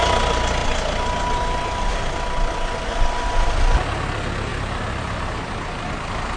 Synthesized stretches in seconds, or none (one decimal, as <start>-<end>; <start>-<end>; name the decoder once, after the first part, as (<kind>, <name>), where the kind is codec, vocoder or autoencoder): 0.6-1.8 (vocoder, BigVGAN v2); 4.5-6.4